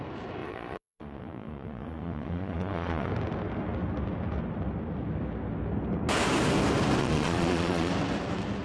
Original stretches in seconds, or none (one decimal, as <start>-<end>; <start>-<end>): 0.0-0.4; 3.1-7.0; 7.9-8.6